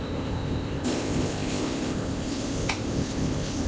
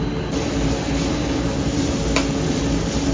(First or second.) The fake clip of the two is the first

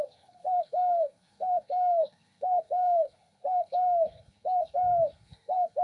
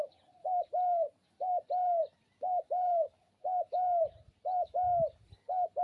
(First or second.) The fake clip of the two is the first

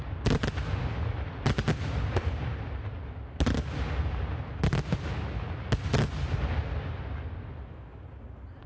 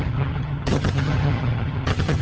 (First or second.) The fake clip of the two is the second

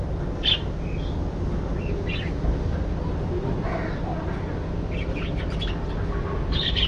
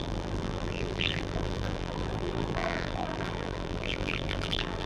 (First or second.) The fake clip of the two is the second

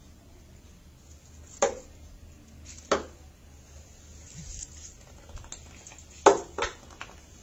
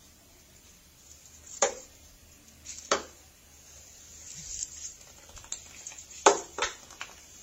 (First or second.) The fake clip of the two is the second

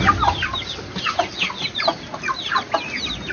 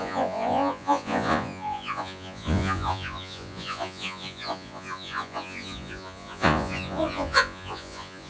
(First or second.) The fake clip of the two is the second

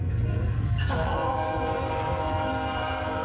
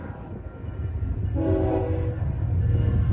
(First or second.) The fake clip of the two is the first